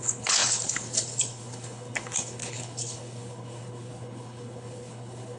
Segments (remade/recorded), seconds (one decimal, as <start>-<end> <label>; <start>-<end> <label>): 0.0-5.4 remade